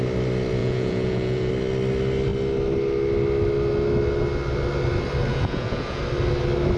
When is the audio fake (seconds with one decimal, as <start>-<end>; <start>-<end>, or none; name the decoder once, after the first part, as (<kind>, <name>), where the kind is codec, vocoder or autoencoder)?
0.6-1.5 (vocoder, Vocos); 5.3-6.0